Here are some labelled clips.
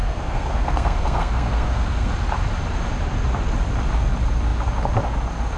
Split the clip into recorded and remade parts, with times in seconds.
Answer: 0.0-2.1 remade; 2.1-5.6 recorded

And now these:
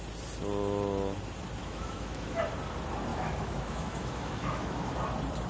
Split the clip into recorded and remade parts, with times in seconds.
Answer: 0.0-1.6 recorded; 1.6-2.4 remade; 2.4-3.1 recorded; 3.1-4.9 remade; 4.9-5.5 recorded

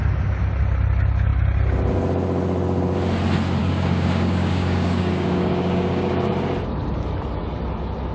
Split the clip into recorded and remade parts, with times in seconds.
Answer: 0.0-3.6 recorded; 3.6-6.3 remade; 6.3-8.1 recorded

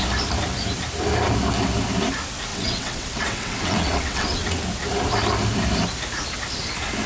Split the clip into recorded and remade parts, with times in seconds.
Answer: 0.0-2.5 recorded; 2.5-4.6 remade; 4.6-7.1 recorded

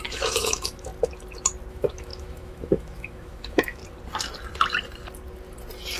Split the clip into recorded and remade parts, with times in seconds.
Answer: 0.0-0.9 remade; 0.9-1.7 recorded; 1.7-3.8 remade; 3.8-6.0 recorded

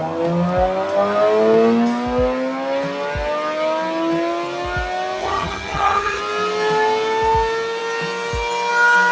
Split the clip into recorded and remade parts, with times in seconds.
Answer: 0.0-5.2 recorded; 5.2-6.2 remade; 6.2-9.1 recorded